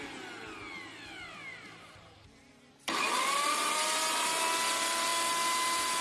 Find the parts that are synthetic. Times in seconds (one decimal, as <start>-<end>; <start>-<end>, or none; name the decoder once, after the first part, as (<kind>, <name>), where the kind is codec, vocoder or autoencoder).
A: 1.5-3.5 (vocoder, BigVGAN v2)